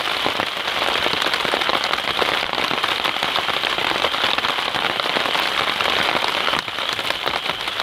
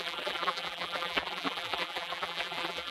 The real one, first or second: first